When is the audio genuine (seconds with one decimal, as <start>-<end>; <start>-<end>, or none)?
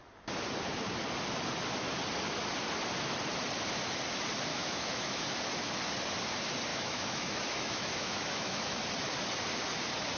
0.0-4.5; 5.2-6.7; 8.8-10.2